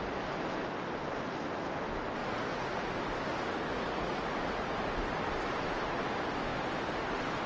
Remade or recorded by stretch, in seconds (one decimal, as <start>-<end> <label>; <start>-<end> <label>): 0.0-2.2 recorded; 2.2-2.9 remade; 2.9-3.7 recorded; 3.7-4.7 remade; 4.7-7.5 recorded